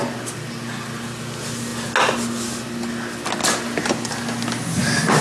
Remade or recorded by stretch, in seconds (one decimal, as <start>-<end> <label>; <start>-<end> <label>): 0.0-5.2 recorded